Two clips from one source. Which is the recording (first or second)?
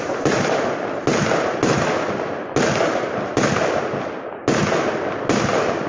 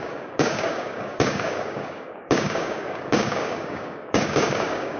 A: first